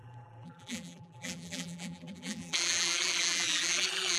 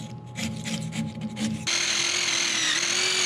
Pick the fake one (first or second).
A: first